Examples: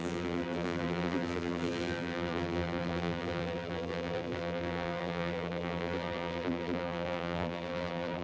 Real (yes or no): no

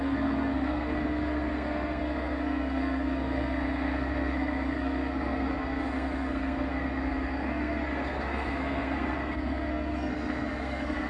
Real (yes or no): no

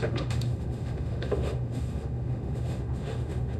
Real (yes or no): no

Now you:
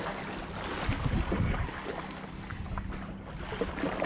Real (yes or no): yes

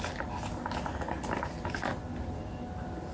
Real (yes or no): yes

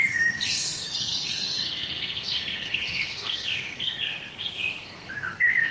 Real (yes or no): no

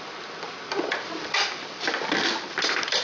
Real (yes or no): no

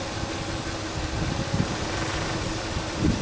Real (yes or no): yes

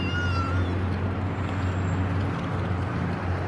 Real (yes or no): yes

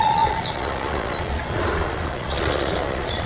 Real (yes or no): no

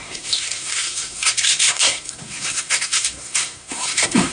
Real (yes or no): no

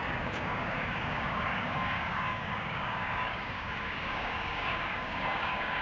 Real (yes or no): no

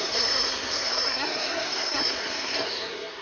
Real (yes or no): no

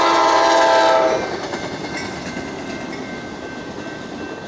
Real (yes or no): yes